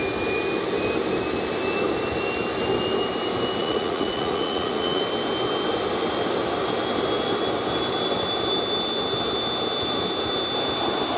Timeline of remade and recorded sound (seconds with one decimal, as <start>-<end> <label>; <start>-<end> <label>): 0.0-3.6 recorded; 3.6-5.0 remade; 5.0-11.2 recorded